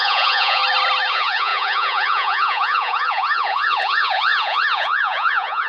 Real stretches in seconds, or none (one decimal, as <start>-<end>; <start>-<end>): 0.6-1.1